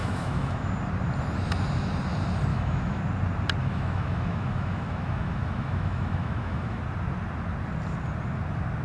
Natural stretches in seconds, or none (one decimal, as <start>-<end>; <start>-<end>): 0.7-2.5; 3.0-3.6; 6.8-8.8